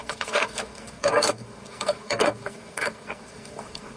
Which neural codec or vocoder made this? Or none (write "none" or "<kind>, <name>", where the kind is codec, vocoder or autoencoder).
codec, SNAC